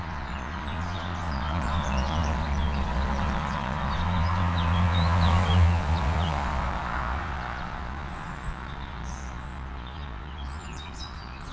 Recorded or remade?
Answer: remade